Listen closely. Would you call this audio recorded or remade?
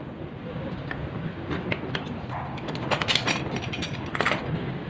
recorded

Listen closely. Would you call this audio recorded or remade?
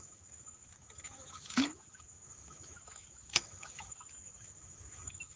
remade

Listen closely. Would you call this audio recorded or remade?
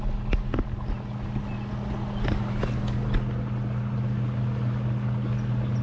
recorded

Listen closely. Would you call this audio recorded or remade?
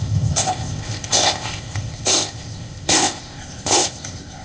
remade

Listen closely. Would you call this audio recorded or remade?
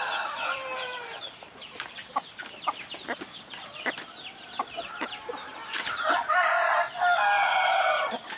remade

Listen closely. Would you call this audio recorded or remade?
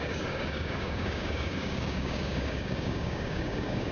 remade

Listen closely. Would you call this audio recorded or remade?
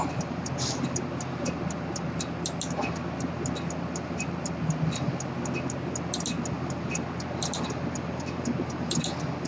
recorded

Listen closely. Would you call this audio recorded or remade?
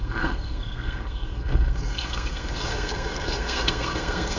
remade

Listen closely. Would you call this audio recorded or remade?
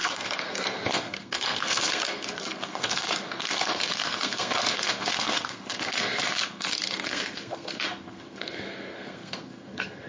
remade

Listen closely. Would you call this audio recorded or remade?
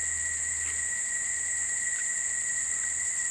recorded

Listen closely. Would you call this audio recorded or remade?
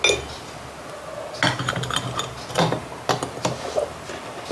recorded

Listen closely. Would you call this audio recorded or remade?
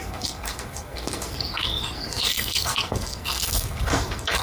remade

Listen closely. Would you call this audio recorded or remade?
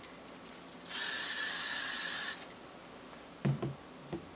recorded